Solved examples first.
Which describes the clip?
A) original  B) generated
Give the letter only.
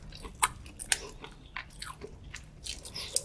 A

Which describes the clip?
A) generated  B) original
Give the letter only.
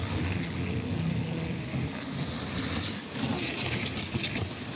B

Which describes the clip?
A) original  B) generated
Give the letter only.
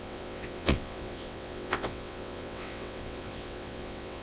B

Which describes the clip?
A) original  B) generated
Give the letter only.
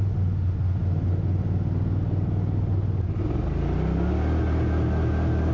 A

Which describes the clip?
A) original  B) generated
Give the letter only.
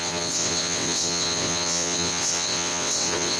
B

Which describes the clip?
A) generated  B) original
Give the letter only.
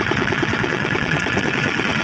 A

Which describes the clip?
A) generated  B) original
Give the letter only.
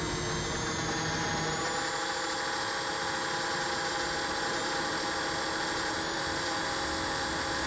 B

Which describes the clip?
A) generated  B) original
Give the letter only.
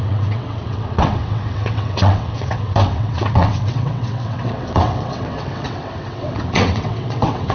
A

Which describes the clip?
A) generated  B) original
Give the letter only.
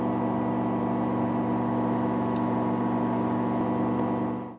B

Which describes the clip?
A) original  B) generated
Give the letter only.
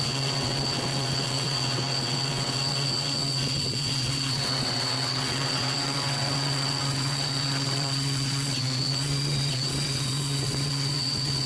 B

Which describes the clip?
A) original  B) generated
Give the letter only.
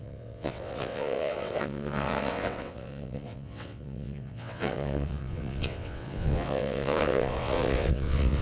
B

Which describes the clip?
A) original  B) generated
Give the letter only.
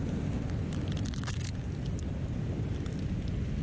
A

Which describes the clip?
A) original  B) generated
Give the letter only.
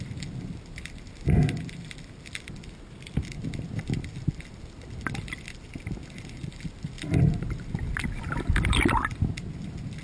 A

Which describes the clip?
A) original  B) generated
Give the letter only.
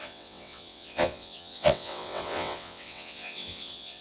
B